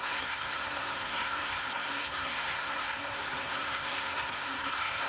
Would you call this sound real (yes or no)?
no